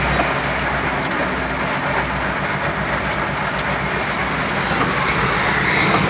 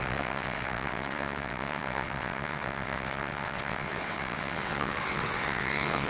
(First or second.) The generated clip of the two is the second